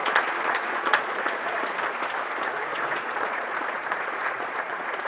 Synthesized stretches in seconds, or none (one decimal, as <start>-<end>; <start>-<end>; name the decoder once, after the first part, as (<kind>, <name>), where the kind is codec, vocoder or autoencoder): 0.0-1.6 (vocoder, Vocos); 2.7-5.1